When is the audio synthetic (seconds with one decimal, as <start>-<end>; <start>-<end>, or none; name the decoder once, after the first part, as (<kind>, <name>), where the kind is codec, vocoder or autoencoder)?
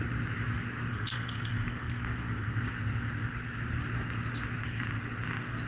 0.9-2.8 (codec, SNAC)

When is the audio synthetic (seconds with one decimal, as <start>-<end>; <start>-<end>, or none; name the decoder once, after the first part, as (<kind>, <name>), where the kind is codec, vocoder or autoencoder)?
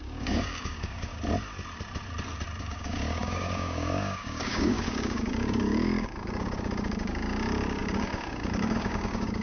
0.0-1.1 (codec, DAC); 2.6-9.4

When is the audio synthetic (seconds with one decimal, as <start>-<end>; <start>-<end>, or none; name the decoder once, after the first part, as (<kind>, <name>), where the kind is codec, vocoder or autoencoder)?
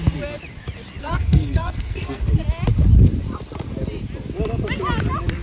1.0-2.2 (codec, SNAC)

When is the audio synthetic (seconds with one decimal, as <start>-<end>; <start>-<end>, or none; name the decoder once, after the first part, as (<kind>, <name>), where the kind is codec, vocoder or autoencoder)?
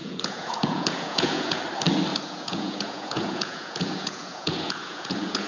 0.0-1.6 (vocoder, Vocos); 2.1-5.5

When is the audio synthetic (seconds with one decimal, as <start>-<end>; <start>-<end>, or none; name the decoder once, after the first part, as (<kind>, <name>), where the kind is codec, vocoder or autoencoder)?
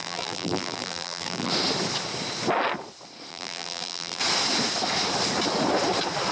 0.0-1.5 (vocoder, BigVGAN v2); 3.3-4.2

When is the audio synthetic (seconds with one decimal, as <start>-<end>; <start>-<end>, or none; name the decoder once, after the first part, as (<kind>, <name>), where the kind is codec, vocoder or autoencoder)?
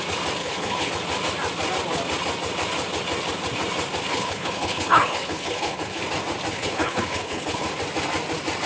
0.4-0.9 (codec, HILCodec); 4.1-6.0; 6.5-7.7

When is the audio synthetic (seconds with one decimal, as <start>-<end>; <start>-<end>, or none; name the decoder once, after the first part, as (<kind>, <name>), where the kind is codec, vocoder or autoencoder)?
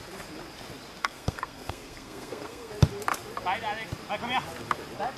1.0-2.7 (codec, SNAC)